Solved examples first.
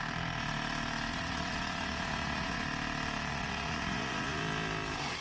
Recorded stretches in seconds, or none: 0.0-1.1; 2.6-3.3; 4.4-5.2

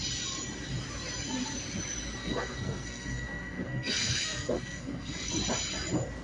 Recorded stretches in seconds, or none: 0.0-2.2; 5.3-6.2

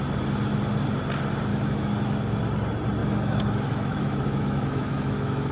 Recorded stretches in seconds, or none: 0.0-1.5; 2.2-3.0

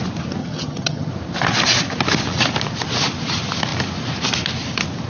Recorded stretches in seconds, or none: 0.0-0.4; 1.1-5.1

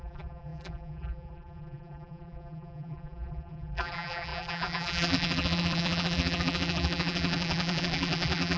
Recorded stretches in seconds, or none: none

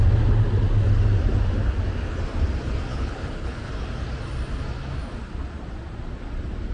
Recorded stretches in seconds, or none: 0.0-2.9; 3.7-6.7

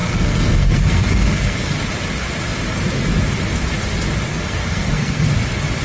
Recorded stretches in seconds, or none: 1.7-4.3; 5.3-5.8